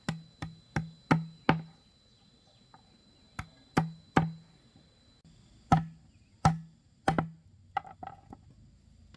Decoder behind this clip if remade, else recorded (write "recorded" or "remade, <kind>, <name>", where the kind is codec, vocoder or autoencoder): recorded